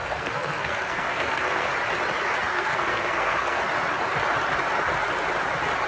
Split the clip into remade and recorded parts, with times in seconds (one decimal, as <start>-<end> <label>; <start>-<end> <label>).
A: 0.0-1.7 remade; 1.7-2.5 recorded; 2.5-3.6 remade; 3.6-5.9 recorded